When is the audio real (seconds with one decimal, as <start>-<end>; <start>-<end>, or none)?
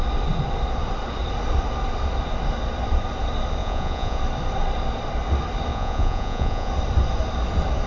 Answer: 0.0-3.6; 4.2-5.7; 6.7-7.9